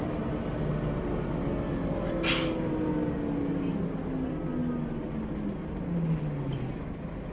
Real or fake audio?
real